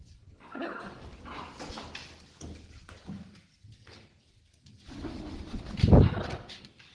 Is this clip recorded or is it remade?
recorded